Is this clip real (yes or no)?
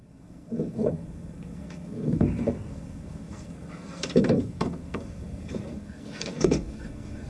no